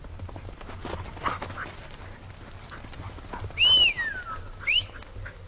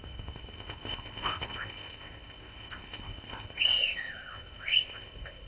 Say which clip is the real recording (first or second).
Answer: first